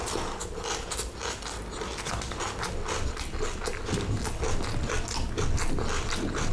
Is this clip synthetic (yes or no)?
no